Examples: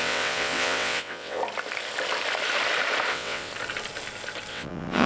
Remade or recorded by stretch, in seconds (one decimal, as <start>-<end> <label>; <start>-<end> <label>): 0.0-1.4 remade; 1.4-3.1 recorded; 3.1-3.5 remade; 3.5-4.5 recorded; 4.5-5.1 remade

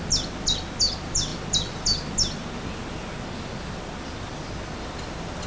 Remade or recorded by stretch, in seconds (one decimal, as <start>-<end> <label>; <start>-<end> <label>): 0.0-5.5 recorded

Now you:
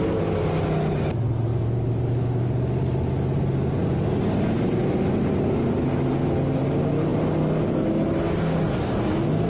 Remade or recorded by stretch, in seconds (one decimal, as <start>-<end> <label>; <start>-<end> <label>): 0.0-9.5 recorded

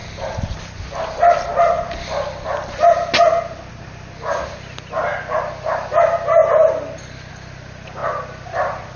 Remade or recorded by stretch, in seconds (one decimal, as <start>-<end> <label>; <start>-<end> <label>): 0.0-9.0 recorded

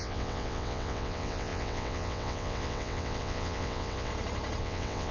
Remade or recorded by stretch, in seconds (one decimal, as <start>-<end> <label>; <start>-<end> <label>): 0.0-4.1 remade; 4.1-4.6 recorded; 4.6-5.1 remade